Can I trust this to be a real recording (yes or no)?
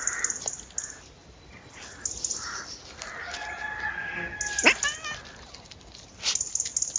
yes